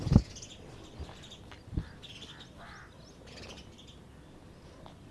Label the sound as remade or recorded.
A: recorded